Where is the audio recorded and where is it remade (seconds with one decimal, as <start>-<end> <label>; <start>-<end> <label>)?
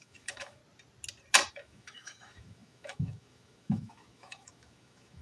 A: 0.0-0.6 remade; 0.6-1.5 recorded; 1.5-5.2 remade